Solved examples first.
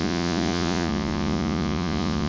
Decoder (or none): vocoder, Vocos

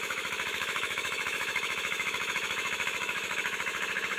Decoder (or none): autoencoder, DAC-VAE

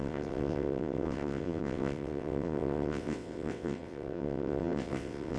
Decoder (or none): vocoder, WaveNeXt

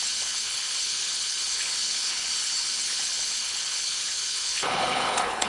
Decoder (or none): codec, HILCodec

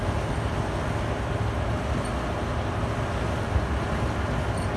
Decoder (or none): none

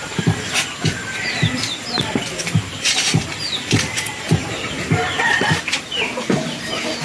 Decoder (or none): vocoder, BigVGAN v2